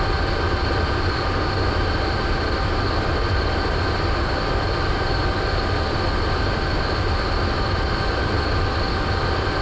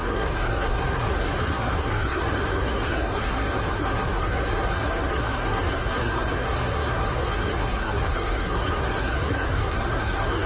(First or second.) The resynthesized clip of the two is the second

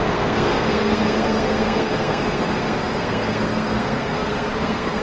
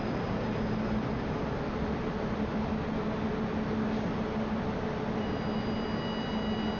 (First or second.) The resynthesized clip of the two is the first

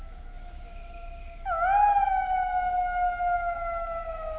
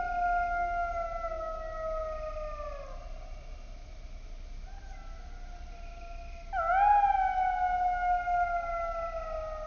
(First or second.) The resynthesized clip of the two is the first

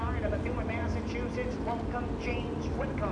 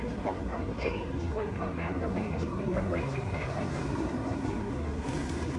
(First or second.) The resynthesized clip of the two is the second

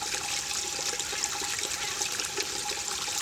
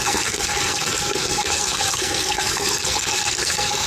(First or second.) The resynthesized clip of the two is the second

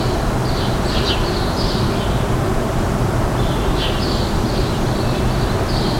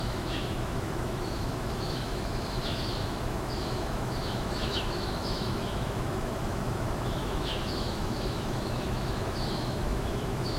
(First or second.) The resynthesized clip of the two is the second